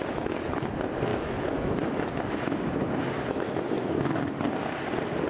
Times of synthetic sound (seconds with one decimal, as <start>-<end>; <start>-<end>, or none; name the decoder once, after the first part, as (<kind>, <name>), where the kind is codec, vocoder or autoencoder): 0.0-0.7 (autoencoder, DAC-VAE); 1.1-4.3

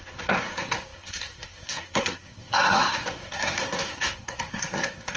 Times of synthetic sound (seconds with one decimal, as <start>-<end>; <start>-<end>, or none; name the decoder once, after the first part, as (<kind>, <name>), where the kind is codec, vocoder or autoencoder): 0.0-5.2 (codec, SNAC)

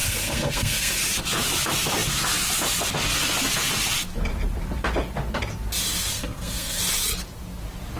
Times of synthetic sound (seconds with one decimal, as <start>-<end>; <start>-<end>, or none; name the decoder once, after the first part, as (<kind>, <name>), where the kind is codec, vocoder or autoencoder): 0.0-1.0 (codec, SNAC); 6.1-6.8

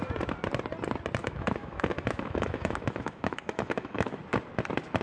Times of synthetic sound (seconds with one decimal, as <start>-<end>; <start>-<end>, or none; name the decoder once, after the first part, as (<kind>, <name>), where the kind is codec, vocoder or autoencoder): 1.2-4.2 (autoencoder, DAC-VAE)